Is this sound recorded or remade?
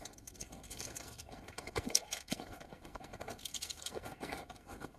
remade